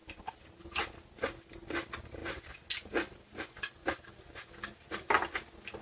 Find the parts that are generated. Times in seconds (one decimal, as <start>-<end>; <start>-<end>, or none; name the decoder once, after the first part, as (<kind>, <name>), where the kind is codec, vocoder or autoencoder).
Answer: none